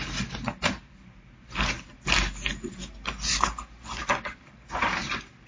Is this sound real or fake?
real